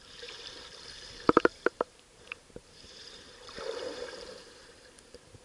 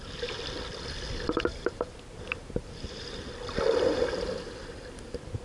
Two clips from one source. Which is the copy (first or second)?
first